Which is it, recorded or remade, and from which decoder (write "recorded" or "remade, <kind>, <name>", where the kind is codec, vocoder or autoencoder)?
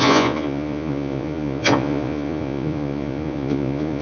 remade, vocoder, Vocos